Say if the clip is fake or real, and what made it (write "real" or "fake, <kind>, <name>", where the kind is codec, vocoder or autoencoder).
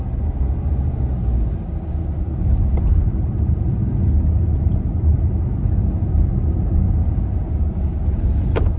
real